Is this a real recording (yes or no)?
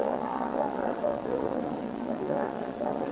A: no